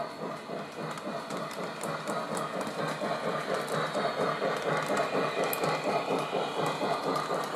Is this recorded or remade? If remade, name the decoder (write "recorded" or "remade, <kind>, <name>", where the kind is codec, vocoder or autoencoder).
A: recorded